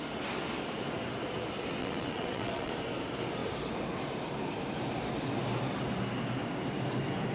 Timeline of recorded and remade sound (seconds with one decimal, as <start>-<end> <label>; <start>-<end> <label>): 0.0-1.8 recorded; 1.8-2.7 remade; 2.7-7.3 recorded

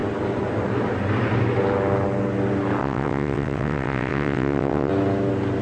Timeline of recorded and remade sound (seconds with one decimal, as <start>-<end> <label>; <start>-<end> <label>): 0.0-2.8 recorded; 2.8-4.9 remade; 4.9-5.6 recorded

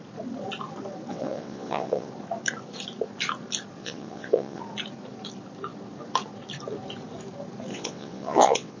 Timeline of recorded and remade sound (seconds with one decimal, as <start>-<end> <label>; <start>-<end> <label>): 0.0-1.1 recorded; 1.1-2.1 remade; 2.1-3.8 recorded; 3.8-4.6 remade; 4.6-7.7 recorded; 7.7-8.8 remade